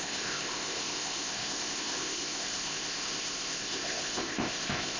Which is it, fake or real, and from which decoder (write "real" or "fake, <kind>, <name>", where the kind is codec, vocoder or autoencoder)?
fake, codec, ZipCodec